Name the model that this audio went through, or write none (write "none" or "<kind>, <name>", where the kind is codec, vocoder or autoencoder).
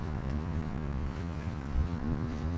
vocoder, Vocos